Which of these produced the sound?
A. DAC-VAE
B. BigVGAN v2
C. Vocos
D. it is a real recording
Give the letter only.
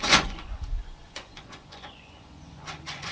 C